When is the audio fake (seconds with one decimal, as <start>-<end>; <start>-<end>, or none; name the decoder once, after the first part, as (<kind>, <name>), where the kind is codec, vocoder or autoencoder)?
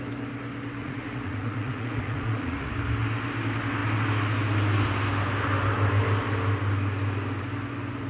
0.8-2.7 (vocoder, Vocos)